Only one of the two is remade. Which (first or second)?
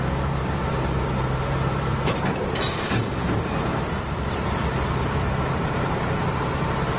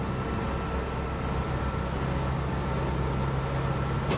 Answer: first